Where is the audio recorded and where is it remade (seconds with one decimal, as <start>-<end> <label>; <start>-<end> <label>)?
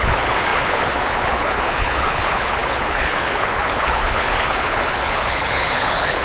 0.0-6.2 remade